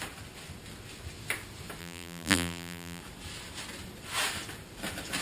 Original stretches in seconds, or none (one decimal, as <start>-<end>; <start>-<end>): 0.0-1.8; 3.0-5.2